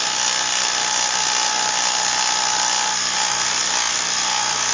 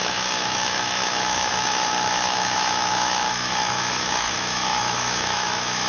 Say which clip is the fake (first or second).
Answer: second